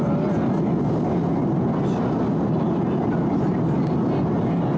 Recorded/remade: recorded